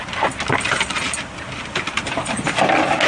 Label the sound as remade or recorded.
recorded